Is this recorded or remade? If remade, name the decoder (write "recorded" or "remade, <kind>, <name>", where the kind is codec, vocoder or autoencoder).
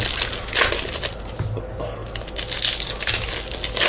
recorded